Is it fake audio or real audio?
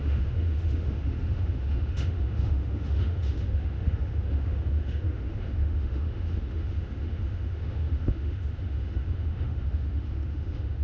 fake